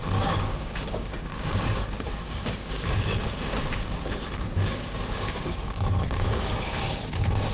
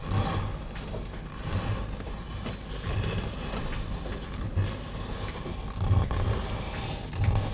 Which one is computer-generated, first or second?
first